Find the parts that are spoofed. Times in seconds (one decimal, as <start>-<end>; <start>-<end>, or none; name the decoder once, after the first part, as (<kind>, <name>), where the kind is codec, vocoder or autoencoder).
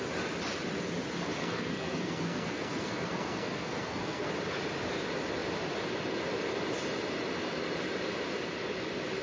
1.4-4.3 (codec, SNAC)